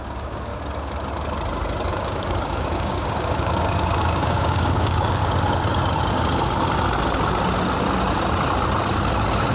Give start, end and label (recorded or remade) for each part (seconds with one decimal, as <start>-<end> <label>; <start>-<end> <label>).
0.0-0.5 remade; 0.5-1.9 recorded; 1.9-5.2 remade; 5.2-9.5 recorded